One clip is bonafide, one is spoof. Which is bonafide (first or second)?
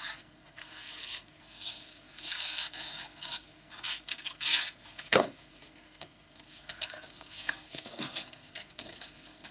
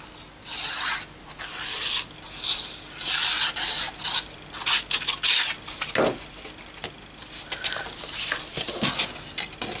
second